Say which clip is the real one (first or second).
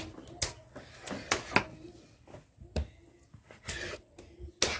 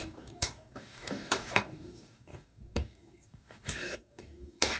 first